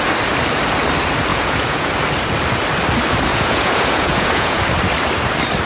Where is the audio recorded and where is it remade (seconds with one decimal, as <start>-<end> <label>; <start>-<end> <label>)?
0.0-1.3 recorded; 1.3-1.9 remade; 1.9-3.3 recorded; 3.3-4.6 remade; 4.6-5.7 recorded